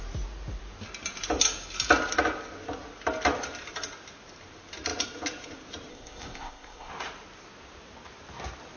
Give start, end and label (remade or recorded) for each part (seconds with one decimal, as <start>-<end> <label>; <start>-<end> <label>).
0.0-5.9 recorded; 5.9-6.9 remade; 6.9-8.8 recorded